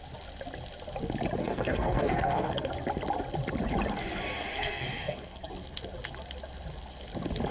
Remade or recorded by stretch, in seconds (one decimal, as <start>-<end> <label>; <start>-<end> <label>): 0.0-1.4 recorded; 1.4-2.7 remade; 2.7-4.5 recorded; 4.5-5.5 remade; 5.5-7.5 recorded